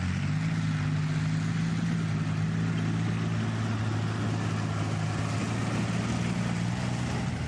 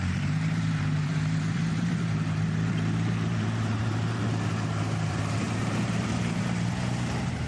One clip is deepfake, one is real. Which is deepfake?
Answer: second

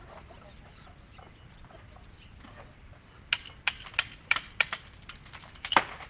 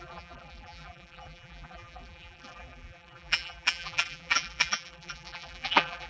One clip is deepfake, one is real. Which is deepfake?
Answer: second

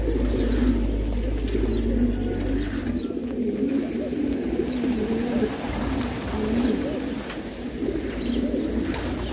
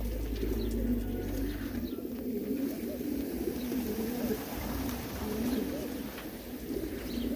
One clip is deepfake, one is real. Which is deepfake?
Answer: second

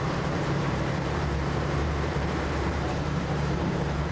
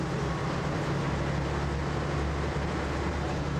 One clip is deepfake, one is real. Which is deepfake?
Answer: first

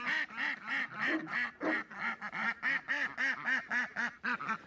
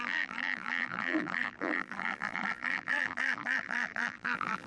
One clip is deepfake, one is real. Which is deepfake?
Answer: second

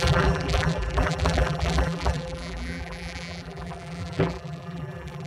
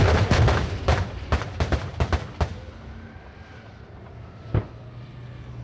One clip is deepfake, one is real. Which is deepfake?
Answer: first